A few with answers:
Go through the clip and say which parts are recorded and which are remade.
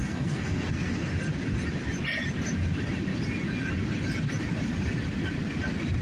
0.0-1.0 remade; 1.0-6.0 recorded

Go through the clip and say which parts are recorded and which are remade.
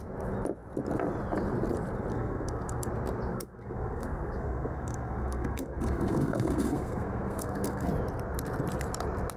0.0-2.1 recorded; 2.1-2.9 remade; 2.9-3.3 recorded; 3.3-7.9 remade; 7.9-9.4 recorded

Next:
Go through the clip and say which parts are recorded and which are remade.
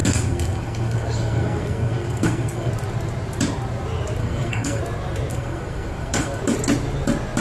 0.0-2.7 remade; 2.7-4.2 recorded; 4.2-4.8 remade; 4.8-5.3 recorded; 5.3-6.4 remade; 6.4-7.4 recorded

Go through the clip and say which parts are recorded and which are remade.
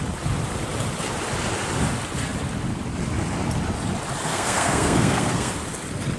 0.0-4.3 recorded; 4.3-5.5 remade; 5.5-6.2 recorded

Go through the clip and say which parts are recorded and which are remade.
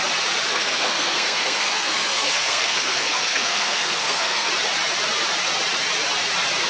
0.0-0.5 recorded; 0.5-4.5 remade; 4.5-6.7 recorded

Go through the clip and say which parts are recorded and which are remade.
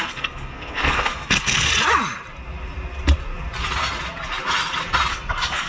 0.0-1.7 remade; 1.7-5.1 recorded; 5.1-5.7 remade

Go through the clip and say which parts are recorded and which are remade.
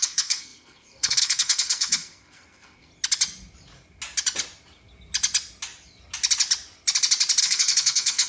0.0-2.9 remade; 2.9-7.4 recorded; 7.4-8.3 remade